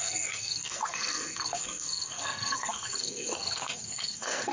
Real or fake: fake